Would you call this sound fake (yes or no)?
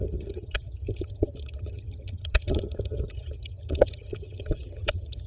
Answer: yes